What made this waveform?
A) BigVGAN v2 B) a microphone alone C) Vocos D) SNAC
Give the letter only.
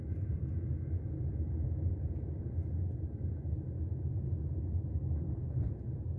B